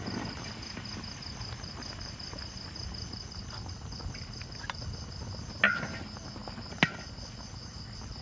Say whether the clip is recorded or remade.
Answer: recorded